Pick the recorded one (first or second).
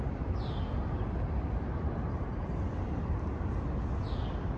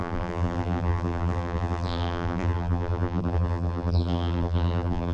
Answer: first